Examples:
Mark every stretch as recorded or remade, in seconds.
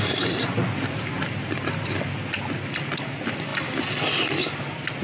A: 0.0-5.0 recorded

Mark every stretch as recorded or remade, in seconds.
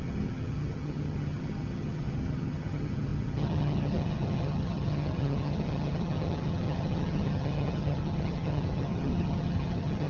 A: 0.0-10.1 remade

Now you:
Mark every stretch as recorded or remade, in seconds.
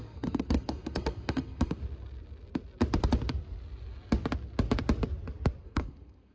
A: 0.0-1.8 remade; 1.8-5.6 recorded; 5.6-6.3 remade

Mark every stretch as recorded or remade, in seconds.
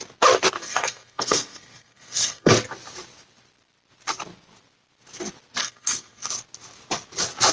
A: 0.0-0.6 recorded; 0.6-2.5 remade; 2.5-5.6 recorded; 5.6-6.3 remade; 6.3-7.5 recorded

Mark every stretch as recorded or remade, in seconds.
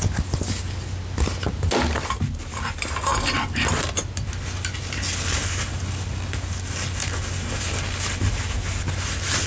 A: 0.0-9.5 recorded